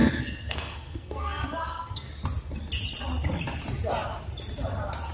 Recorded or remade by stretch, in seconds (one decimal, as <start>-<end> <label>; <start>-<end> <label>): 0.0-2.1 remade; 2.1-5.1 recorded